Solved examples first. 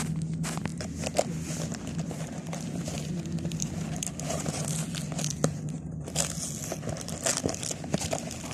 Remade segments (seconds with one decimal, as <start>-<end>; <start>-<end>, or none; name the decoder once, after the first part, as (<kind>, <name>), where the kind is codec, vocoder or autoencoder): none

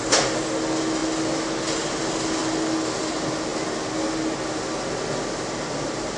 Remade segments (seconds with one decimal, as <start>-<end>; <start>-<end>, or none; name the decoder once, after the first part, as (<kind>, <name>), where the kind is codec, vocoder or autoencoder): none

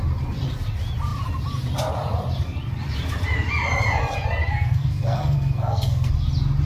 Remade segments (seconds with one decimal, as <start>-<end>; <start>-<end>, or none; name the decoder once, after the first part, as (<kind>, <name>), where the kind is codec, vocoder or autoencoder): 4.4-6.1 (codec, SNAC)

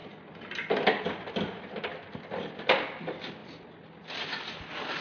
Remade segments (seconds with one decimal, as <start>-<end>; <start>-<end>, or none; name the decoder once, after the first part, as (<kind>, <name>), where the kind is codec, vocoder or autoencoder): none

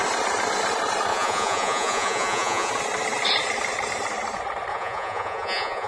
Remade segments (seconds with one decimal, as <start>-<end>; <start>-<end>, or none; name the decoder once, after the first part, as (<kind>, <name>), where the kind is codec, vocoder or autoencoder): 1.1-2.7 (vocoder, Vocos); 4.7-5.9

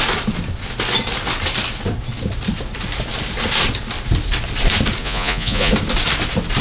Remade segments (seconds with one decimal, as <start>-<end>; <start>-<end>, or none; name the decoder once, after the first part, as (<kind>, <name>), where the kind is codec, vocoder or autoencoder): 5.0-5.7 (vocoder, Vocos)

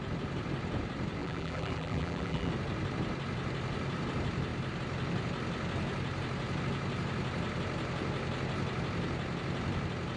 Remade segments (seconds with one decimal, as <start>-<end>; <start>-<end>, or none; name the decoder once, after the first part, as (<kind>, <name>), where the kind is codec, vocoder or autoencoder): 1.2-2.5 (vocoder, BigVGAN v2)

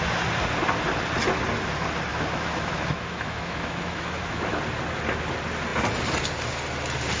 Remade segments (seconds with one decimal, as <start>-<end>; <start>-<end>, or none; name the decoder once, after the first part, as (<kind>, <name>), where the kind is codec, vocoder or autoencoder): 2.1-4.6 (autoencoder, DAC-VAE)